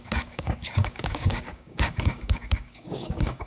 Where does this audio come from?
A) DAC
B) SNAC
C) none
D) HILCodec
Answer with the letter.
A